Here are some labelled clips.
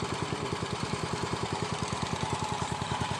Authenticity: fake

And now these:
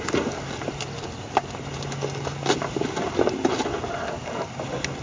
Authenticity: real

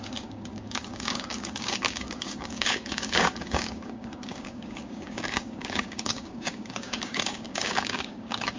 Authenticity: fake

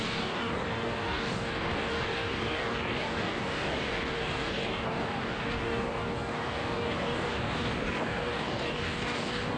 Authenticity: fake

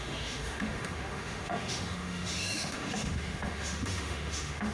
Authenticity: fake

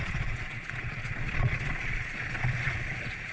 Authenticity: fake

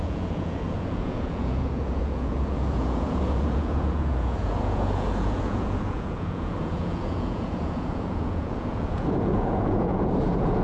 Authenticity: fake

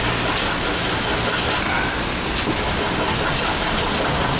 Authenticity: real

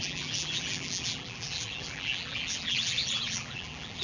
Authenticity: fake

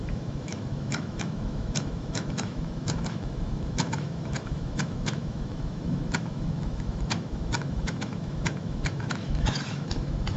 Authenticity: fake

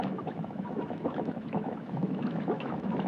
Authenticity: fake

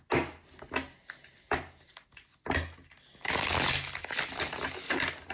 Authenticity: real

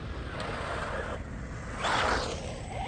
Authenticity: real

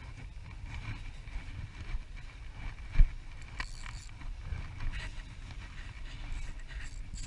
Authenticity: real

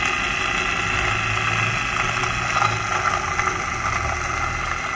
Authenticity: real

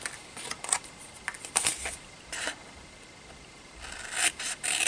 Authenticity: real